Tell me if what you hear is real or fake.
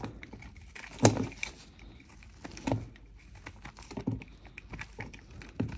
real